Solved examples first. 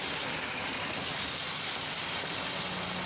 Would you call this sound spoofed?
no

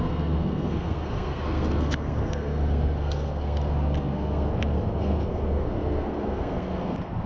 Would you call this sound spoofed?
yes